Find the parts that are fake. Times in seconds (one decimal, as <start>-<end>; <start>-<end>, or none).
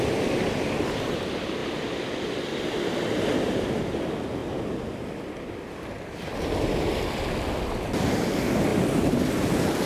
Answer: 1.6-3.8; 8.7-9.2